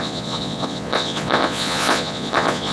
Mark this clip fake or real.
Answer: fake